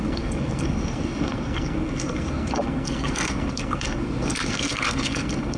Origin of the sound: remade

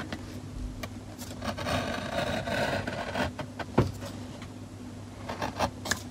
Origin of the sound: recorded